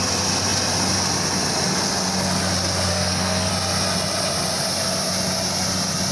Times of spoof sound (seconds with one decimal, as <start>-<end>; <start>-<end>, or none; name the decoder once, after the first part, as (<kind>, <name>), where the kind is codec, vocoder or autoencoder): 2.9-3.5 (codec, SNAC)